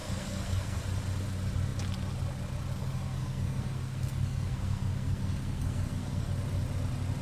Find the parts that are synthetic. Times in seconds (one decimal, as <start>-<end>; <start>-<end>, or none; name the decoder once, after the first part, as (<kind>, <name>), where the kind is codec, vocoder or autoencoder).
0.0-0.8 (codec, SNAC); 2.8-6.3